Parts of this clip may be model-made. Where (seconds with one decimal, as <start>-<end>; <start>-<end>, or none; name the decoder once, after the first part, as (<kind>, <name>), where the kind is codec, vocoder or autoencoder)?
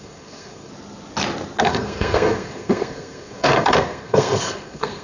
0.0-0.7 (codec, SNAC); 1.6-5.0